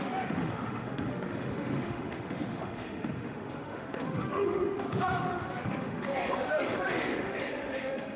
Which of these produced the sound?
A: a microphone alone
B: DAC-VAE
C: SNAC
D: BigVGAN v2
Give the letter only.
B